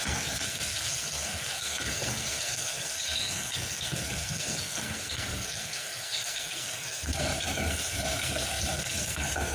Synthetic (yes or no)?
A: yes